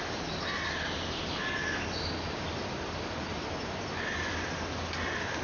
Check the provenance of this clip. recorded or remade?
recorded